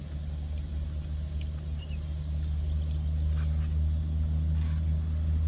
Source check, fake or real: real